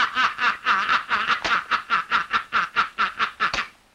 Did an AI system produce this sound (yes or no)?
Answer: yes